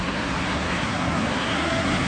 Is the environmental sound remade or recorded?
remade